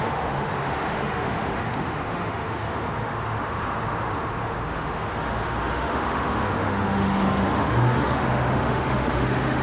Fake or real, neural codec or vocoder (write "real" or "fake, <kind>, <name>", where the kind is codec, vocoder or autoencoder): fake, autoencoder, DAC-VAE